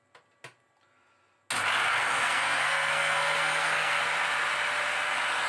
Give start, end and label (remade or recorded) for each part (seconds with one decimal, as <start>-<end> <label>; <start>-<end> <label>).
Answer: 0.0-2.0 recorded; 2.0-4.0 remade; 4.0-5.5 recorded